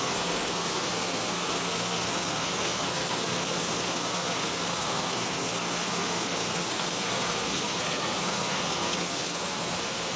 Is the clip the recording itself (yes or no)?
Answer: no